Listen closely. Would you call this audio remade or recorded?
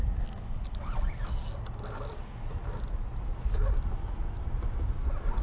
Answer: recorded